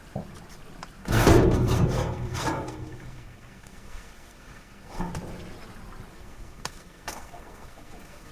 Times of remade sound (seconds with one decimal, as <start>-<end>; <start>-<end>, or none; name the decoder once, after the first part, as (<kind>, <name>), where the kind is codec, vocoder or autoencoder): 1.0-5.1 (codec, SNAC); 6.1-8.3